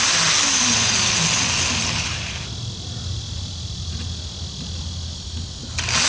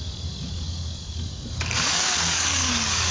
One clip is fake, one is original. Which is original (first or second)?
first